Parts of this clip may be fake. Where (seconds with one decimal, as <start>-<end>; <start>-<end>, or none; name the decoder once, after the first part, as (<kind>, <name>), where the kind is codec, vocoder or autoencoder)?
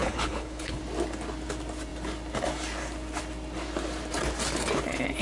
0.0-0.8 (codec, HILCodec)